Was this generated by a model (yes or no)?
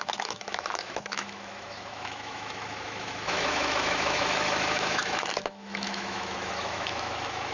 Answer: yes